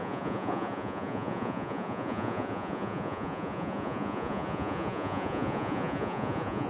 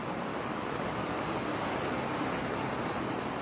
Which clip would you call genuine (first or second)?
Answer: second